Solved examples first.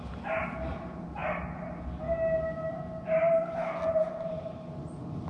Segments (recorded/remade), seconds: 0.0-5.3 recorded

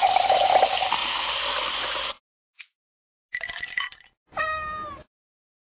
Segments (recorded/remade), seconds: 0.0-5.7 recorded

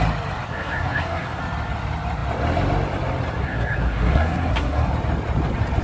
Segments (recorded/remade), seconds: 0.0-0.5 recorded; 0.5-1.4 remade; 1.4-3.4 recorded; 3.4-4.9 remade; 4.9-5.8 recorded

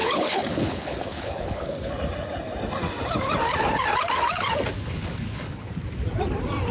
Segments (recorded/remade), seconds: 0.0-1.9 remade; 1.9-4.8 recorded; 4.8-5.7 remade; 5.7-6.7 recorded

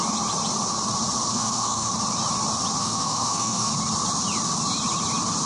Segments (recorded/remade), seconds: 0.0-1.3 recorded; 1.3-1.9 remade; 1.9-2.8 recorded; 2.8-3.7 remade; 3.7-5.5 recorded

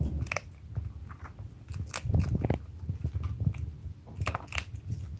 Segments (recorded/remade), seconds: 0.0-5.2 recorded

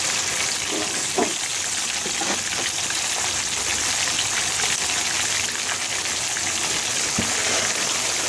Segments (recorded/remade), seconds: 0.0-8.3 recorded